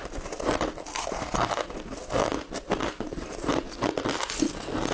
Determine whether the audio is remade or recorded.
recorded